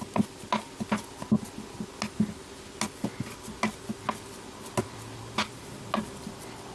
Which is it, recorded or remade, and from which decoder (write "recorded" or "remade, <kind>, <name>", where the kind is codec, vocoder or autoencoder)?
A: recorded